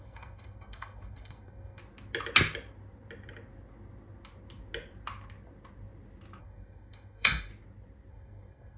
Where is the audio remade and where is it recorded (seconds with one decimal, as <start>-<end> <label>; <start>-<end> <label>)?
0.0-1.8 remade; 1.8-6.4 recorded; 6.4-7.5 remade; 7.5-8.1 recorded; 8.1-8.8 remade